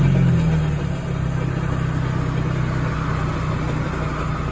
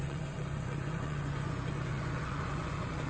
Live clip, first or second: first